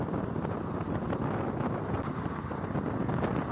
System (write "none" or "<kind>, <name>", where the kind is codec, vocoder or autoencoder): none